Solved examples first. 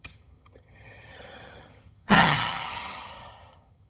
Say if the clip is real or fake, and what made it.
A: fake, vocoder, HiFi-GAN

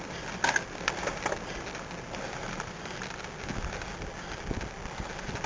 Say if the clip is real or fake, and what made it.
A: real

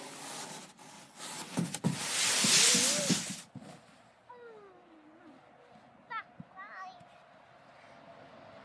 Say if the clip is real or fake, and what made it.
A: real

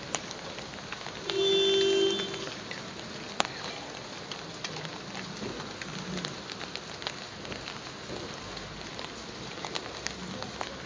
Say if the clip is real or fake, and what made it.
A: real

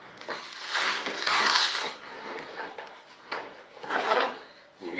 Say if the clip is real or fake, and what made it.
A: fake, codec, SNAC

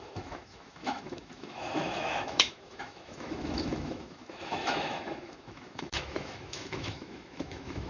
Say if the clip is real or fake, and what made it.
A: fake, autoencoder, DAC-VAE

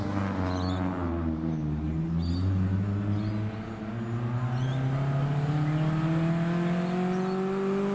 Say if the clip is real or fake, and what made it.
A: real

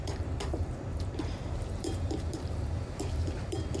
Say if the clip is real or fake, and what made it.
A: fake, vocoder, BigVGAN v2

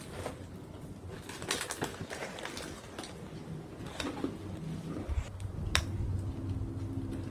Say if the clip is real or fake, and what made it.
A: real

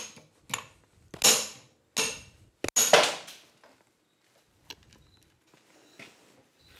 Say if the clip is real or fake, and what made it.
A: real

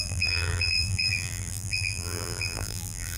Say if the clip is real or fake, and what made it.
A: fake, vocoder, BigVGAN v2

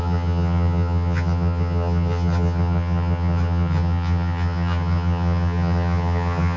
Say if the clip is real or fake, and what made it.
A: fake, vocoder, HiFi-GAN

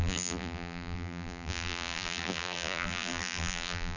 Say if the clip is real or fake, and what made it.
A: fake, vocoder, BigVGAN v2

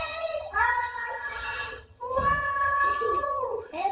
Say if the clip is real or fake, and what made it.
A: fake, vocoder, HiFi-GAN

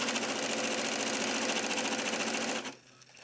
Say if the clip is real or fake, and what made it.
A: real